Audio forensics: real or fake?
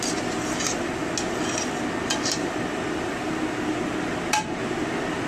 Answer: real